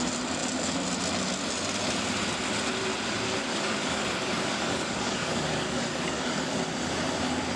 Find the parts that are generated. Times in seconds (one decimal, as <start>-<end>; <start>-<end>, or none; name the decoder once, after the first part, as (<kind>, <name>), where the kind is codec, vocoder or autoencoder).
3.5-6.6 (codec, DAC)

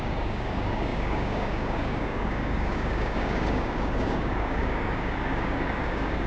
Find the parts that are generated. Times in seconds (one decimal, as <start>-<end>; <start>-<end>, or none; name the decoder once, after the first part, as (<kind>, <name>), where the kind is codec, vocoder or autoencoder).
0.0-6.3 (codec, DAC)

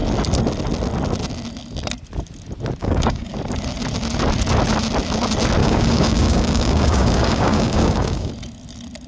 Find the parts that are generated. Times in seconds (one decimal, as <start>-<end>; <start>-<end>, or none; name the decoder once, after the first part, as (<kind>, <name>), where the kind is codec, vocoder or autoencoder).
2.8-3.3 (codec, DAC); 5.6-8.3

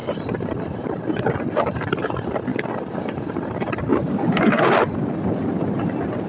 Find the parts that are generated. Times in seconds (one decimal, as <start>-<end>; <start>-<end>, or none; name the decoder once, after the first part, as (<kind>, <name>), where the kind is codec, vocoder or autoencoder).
3.9-4.7 (codec, DAC)

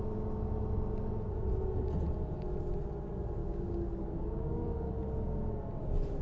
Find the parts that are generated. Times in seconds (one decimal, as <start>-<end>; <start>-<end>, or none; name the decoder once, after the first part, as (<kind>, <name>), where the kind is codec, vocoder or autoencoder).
3.4-4.9 (codec, DAC)

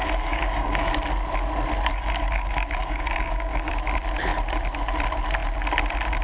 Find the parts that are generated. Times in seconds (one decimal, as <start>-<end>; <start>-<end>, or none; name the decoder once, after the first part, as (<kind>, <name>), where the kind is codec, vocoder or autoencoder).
0.0-0.9 (codec, DAC); 1.9-3.7

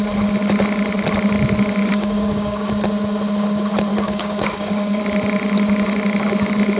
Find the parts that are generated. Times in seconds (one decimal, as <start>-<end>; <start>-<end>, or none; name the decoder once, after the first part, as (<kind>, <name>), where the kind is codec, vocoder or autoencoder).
1.8-2.7 (codec, DAC); 3.9-5.0

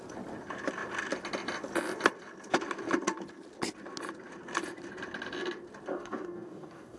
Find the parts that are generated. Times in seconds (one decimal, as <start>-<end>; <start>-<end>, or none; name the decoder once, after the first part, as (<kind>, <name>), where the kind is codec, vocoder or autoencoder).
5.9-7.0 (codec, DAC)